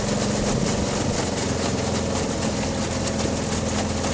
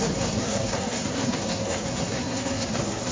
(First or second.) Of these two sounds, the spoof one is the second